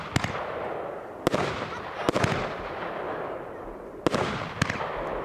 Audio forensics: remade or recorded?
recorded